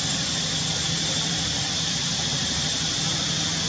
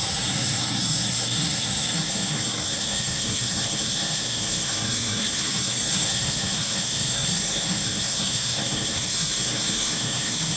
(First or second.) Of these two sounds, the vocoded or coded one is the second